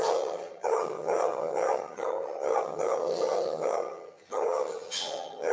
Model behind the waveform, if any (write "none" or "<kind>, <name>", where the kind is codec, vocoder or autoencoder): vocoder, HiFi-GAN